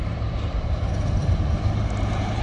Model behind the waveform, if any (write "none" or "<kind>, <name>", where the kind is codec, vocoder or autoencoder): vocoder, BigVGAN v2